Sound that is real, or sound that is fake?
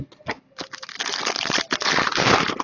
real